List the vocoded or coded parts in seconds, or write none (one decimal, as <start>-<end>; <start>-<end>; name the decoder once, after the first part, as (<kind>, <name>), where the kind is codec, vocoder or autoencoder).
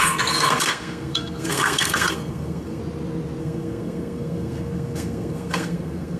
0.0-2.8 (codec, SNAC); 3.4-6.2